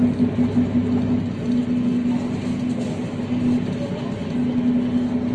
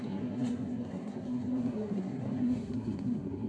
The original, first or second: first